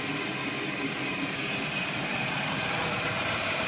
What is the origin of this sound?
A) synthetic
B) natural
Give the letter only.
B